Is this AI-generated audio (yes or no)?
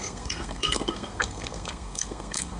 yes